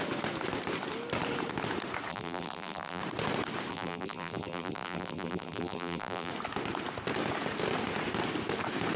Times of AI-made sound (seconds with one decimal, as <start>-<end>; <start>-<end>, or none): 2.1-3.0; 3.7-6.3